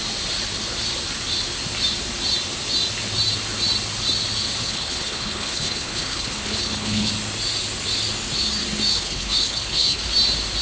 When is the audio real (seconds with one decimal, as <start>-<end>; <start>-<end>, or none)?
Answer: 0.0-4.6; 7.1-8.9; 10.0-10.6